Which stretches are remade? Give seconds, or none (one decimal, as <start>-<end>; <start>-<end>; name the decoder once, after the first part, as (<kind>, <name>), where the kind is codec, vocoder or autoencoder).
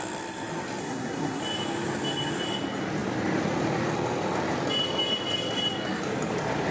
0.8-1.4 (codec, SNAC)